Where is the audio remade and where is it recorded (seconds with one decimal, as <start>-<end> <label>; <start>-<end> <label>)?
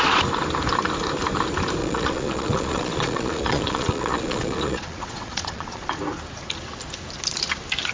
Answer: 0.0-1.8 recorded; 1.8-5.9 remade; 5.9-7.9 recorded